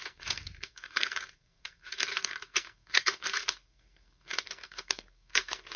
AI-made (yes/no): yes